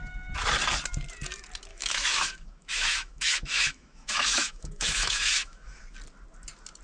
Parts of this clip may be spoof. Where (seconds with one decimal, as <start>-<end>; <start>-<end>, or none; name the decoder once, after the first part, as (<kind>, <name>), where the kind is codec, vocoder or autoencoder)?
1.7-5.8 (autoencoder, DAC-VAE)